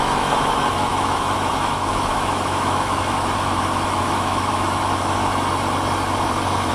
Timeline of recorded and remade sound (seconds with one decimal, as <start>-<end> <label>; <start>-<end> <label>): 0.0-5.2 remade; 5.2-6.7 recorded